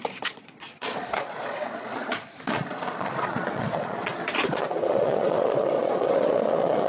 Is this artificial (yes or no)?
yes